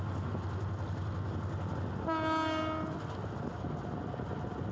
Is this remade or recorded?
recorded